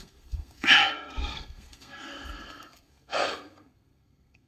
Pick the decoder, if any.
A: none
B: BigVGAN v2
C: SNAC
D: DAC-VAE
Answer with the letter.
C